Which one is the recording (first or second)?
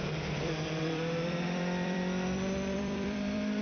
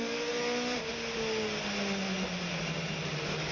second